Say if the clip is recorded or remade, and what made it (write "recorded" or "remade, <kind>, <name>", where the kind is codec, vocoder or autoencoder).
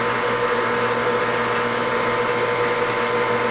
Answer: recorded